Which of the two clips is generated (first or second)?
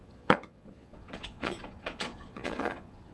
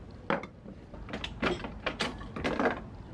first